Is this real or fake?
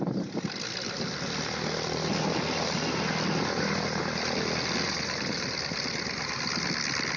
real